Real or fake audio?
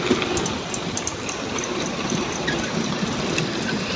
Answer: real